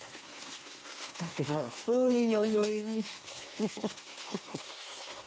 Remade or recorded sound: remade